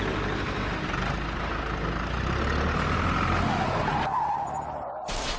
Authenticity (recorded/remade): recorded